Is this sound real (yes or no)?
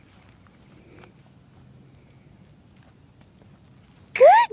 yes